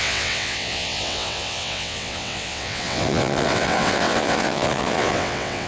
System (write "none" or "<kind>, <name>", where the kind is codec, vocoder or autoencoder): vocoder, WaveNeXt